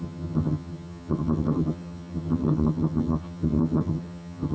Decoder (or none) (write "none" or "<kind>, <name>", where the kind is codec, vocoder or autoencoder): vocoder, HiFi-GAN